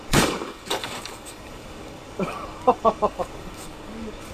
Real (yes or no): no